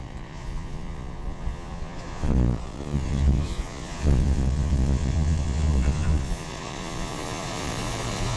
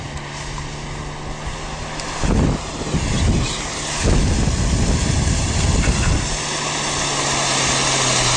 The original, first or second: second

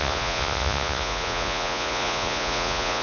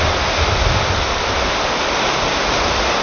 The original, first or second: second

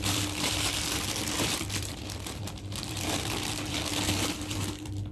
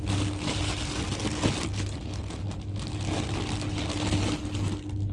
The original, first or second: second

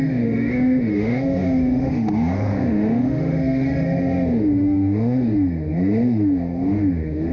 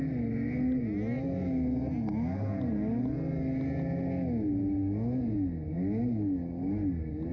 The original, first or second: second